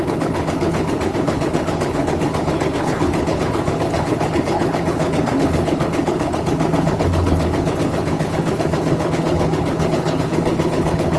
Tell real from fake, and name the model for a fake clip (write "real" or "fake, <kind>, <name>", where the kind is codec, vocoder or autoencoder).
fake, codec, HILCodec